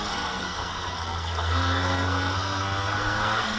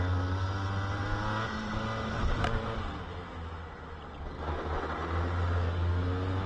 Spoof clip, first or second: first